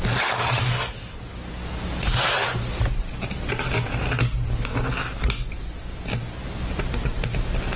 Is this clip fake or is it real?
real